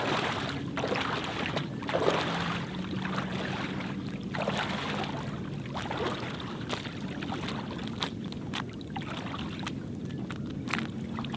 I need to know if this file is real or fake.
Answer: real